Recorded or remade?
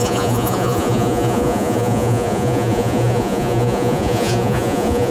remade